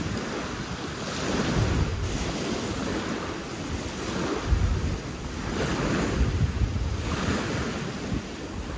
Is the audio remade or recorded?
recorded